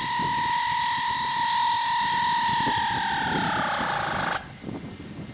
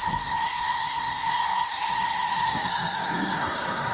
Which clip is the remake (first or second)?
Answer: second